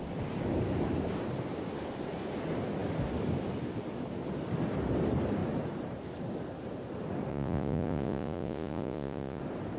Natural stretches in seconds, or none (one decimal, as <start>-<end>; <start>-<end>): 0.0-7.3; 9.4-9.8